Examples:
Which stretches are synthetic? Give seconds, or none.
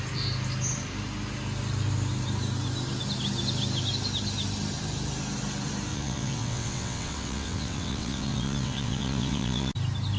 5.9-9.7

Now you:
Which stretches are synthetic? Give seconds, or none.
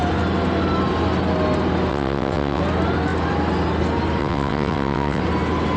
1.9-2.6; 4.2-5.2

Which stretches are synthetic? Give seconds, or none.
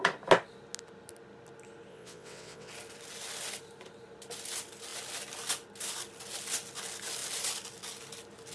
1.9-2.7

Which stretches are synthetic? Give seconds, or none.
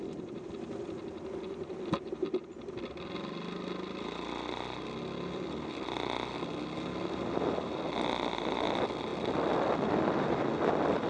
none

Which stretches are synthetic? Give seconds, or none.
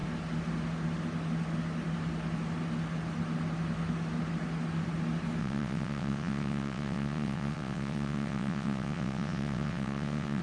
5.4-10.4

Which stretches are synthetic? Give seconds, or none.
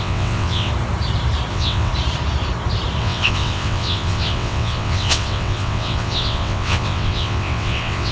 0.0-0.7; 1.5-1.9; 3.0-8.1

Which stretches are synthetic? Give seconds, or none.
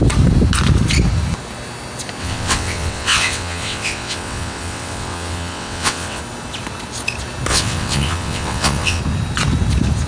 2.2-6.2; 7.5-9.0